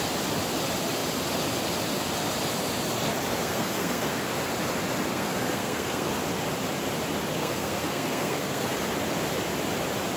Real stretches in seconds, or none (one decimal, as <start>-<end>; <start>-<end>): 0.0-3.4; 4.2-5.1; 6.1-7.4; 8.7-10.2